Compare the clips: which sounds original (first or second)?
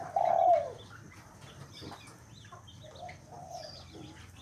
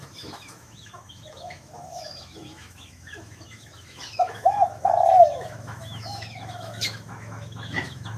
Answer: first